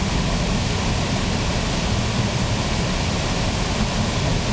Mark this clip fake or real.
real